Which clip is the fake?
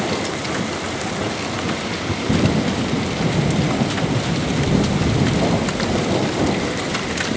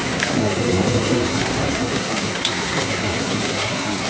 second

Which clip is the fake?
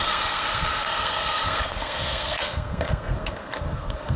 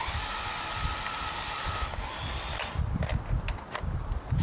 first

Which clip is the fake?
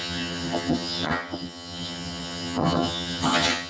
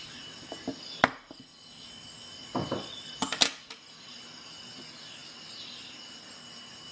first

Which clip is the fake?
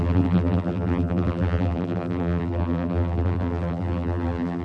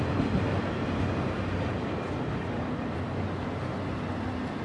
first